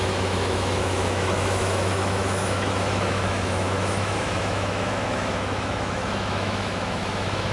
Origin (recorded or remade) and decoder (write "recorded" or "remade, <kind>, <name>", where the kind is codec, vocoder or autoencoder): remade, autoencoder, DAC-VAE